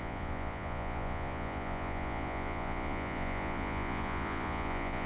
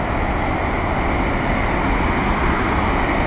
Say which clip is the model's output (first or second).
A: first